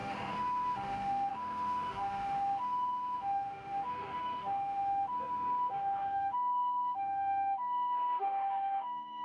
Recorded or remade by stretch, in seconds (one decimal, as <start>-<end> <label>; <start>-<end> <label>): 0.0-9.2 remade